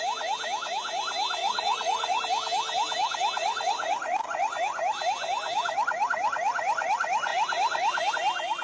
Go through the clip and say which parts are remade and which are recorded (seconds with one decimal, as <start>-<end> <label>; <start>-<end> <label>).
0.0-1.4 recorded; 1.4-2.2 remade; 2.2-3.4 recorded; 3.4-4.5 remade; 4.5-8.6 recorded